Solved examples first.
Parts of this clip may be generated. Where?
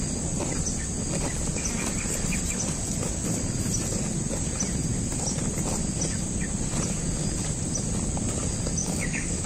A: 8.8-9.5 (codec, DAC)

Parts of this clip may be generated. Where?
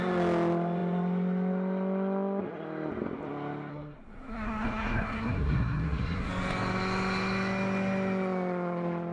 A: 3.7-6.3 (codec, SNAC)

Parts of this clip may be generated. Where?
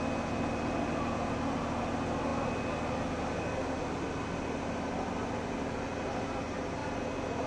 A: none